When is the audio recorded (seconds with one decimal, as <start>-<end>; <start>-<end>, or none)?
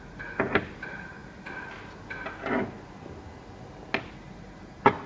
0.0-5.1